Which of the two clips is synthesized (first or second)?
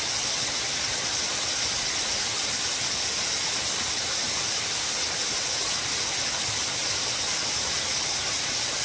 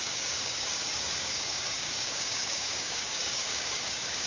second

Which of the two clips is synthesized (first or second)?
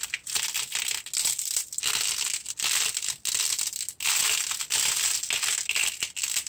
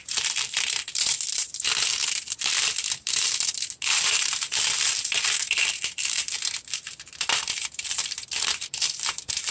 second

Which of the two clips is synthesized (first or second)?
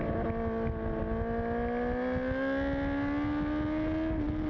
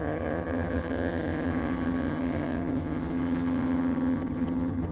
second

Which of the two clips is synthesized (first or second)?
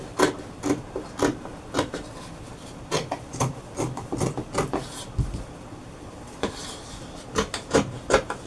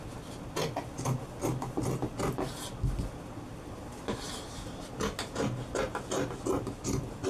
first